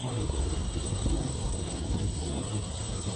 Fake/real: fake